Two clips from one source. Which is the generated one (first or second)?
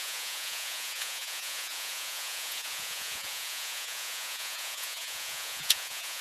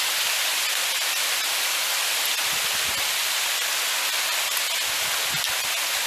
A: first